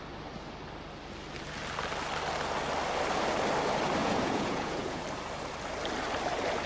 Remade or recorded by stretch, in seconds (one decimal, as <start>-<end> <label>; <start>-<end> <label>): 0.0-4.0 recorded; 4.0-5.0 remade; 5.0-6.7 recorded